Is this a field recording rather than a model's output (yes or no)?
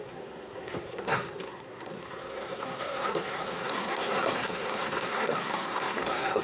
no